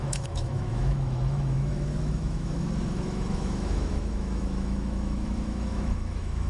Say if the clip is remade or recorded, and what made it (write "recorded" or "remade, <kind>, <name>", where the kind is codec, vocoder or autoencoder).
remade, autoencoder, DAC-VAE